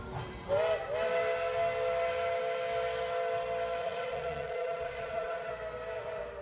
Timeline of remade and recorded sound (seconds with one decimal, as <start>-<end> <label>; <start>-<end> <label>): 0.0-3.8 recorded; 3.8-5.5 remade; 5.5-6.4 recorded